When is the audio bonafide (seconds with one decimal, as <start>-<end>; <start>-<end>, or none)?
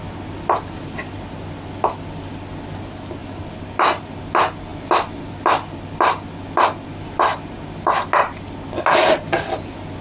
0.0-10.0